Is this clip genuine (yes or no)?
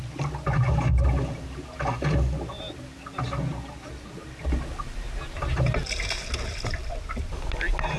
yes